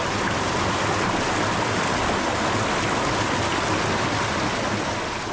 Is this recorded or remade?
recorded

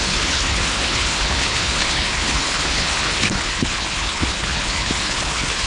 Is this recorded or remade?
remade